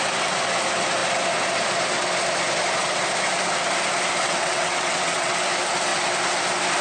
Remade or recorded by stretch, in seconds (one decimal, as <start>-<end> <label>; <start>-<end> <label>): 0.0-4.2 recorded; 4.2-5.3 remade; 5.3-6.8 recorded